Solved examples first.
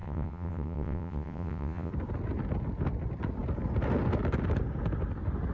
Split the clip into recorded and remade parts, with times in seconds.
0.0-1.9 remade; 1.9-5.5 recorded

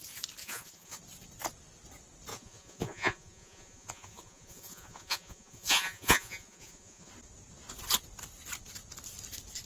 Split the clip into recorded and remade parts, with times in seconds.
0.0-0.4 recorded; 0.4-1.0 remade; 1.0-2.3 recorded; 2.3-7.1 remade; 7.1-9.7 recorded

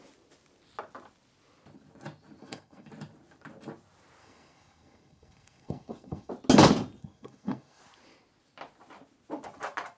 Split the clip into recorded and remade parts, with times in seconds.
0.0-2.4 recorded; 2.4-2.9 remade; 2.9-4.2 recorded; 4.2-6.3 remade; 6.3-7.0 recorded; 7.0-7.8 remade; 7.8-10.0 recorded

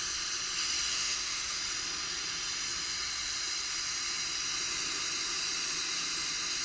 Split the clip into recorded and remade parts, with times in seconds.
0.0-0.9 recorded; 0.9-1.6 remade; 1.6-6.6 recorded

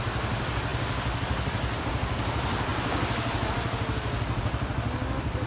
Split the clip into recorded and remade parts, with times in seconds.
0.0-5.5 recorded

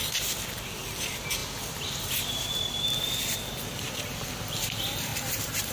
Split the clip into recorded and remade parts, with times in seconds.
0.0-5.1 recorded; 5.1-5.7 remade

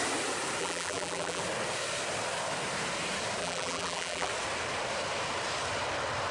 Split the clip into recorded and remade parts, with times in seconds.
0.0-0.6 recorded; 0.6-1.4 remade; 1.4-3.4 recorded; 3.4-4.3 remade; 4.3-6.3 recorded